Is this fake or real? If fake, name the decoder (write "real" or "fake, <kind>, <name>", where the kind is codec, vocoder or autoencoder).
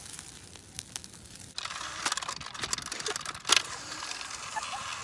real